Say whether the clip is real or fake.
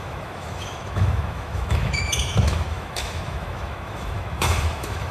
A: fake